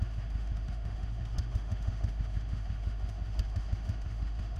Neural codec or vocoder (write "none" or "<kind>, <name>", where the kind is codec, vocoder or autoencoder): autoencoder, DAC-VAE